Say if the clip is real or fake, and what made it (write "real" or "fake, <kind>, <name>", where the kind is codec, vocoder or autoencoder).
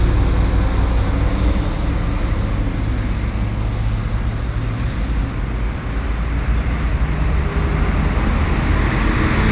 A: real